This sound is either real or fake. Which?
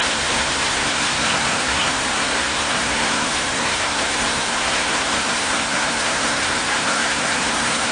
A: fake